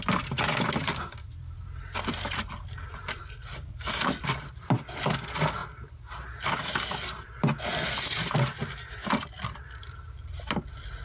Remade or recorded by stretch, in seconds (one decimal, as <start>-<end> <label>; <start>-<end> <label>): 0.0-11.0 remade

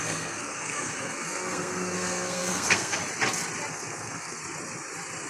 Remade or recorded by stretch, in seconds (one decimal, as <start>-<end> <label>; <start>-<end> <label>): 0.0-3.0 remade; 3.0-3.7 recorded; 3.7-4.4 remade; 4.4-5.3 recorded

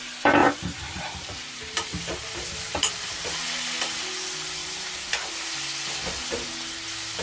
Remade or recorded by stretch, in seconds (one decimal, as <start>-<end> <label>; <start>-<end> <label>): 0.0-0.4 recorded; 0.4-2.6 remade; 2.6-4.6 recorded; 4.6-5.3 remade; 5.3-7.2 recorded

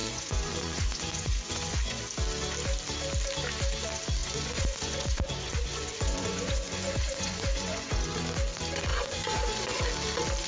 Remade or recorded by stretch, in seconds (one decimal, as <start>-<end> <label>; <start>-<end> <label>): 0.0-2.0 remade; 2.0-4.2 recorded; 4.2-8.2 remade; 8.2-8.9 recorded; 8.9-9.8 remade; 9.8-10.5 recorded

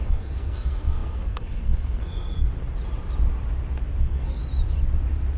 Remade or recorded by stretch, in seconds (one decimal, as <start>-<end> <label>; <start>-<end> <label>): 0.0-2.5 remade; 2.5-4.0 recorded; 4.0-4.4 remade; 4.4-5.4 recorded